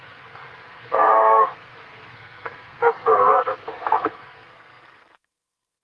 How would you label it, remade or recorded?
remade